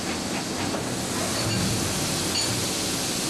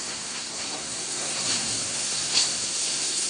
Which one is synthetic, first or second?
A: second